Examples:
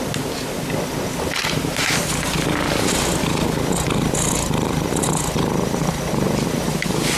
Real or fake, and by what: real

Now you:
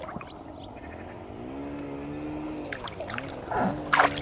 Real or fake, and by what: real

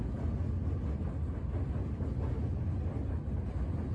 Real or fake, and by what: real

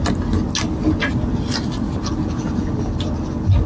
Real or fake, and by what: real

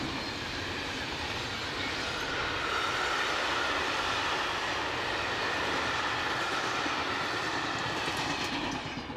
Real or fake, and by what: real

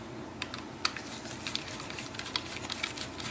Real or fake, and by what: real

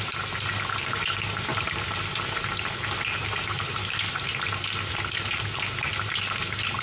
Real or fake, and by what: real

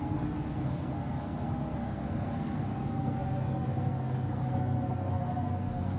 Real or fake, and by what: fake, codec, SNAC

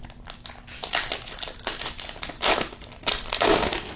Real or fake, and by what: real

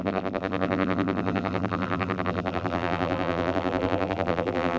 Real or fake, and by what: fake, vocoder, BigVGAN v2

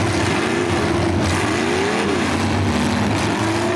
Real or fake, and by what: real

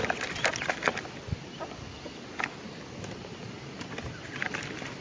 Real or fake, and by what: real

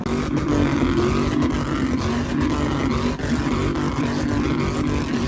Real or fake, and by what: real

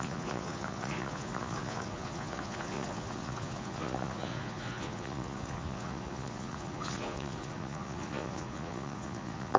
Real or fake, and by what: fake, vocoder, Vocos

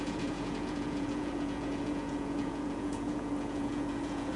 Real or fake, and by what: fake, vocoder, Vocos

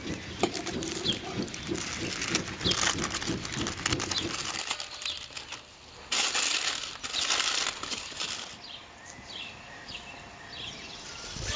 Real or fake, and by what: real